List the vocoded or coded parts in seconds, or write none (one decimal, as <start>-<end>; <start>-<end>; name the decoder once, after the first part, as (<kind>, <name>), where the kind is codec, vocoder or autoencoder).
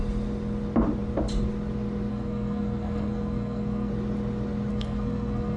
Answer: 2.1-3.9 (codec, SNAC); 4.7-5.6